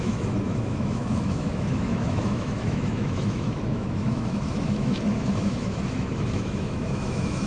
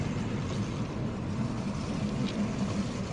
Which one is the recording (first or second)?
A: second